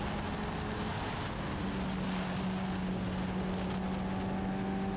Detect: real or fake real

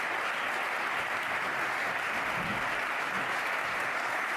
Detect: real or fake real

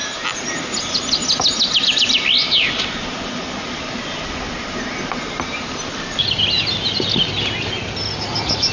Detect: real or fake real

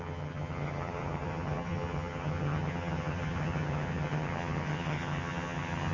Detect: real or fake fake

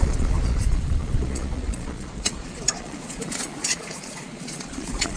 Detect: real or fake fake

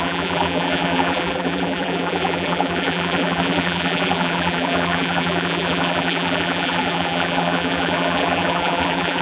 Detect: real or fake fake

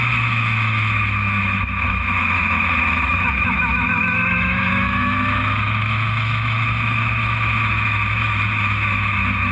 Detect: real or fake fake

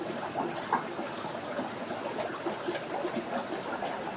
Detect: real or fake real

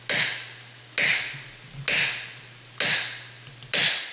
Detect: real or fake real